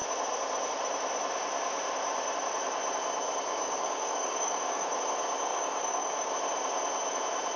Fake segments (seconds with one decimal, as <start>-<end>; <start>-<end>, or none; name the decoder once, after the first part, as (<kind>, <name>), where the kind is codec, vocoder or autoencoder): 3.5-5.0 (codec, DAC); 5.5-6.3